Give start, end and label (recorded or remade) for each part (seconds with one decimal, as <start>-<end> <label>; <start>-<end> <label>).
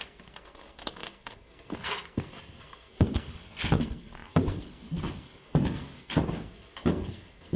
0.0-7.6 remade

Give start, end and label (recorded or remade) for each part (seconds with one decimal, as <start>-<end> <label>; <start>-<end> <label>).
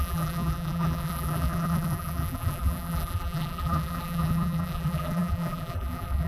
0.0-6.3 remade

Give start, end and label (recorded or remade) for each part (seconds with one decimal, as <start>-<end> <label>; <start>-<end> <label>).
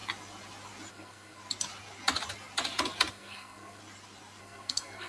0.0-0.9 recorded; 0.9-1.4 remade; 1.4-3.1 recorded; 3.1-3.8 remade; 3.8-4.4 recorded; 4.4-5.1 remade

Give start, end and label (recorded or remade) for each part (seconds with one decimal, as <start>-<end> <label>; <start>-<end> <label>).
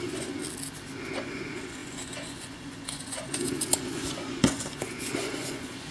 0.0-0.4 remade; 0.4-1.2 recorded; 1.2-5.9 remade